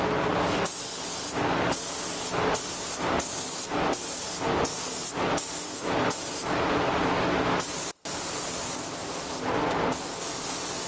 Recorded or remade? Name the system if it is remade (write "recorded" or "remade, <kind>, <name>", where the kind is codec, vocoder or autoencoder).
recorded